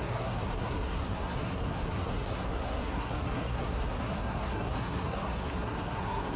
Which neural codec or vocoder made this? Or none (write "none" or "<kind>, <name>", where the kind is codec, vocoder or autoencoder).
codec, SNAC